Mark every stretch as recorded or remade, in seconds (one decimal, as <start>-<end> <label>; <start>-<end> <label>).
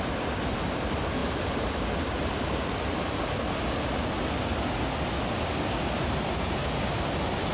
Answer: 0.0-7.5 recorded